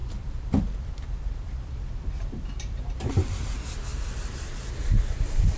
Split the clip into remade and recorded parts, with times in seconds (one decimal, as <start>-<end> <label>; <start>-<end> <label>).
0.0-3.1 remade; 3.1-5.6 recorded